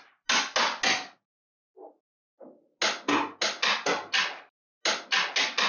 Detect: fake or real real